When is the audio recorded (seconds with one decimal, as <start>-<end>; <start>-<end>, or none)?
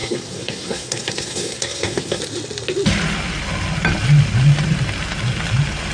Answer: 2.2-5.9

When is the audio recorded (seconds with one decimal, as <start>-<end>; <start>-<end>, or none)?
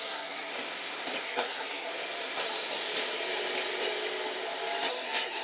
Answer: 0.5-1.2; 1.9-4.9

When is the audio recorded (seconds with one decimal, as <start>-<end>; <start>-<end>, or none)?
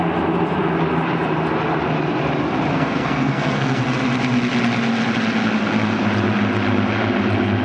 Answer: 0.0-2.7; 3.8-7.6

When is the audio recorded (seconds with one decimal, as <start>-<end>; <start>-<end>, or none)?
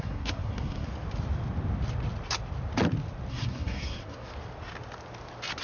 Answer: 0.9-3.3; 4.3-5.6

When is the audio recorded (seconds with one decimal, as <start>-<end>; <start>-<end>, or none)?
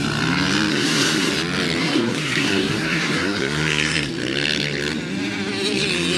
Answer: 0.0-0.7; 1.3-1.8; 4.1-6.2